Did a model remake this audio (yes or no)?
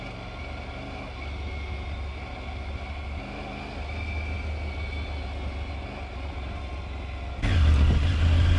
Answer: no